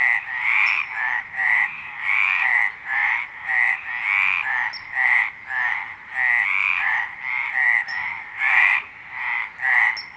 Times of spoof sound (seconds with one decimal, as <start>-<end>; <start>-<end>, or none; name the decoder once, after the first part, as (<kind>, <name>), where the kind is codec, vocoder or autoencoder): 0.0-2.6 (vocoder, BigVGAN v2); 3.0-3.9; 6.5-8.9